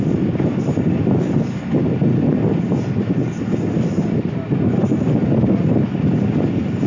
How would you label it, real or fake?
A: real